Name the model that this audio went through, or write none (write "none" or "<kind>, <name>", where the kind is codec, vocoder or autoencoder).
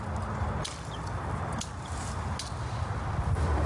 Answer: none